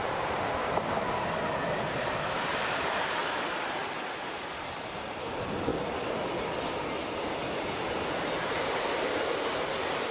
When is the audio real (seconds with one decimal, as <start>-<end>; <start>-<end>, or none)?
3.2-4.6; 5.7-6.4; 7.4-8.6